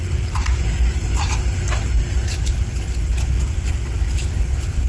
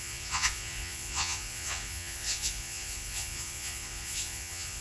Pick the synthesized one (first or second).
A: second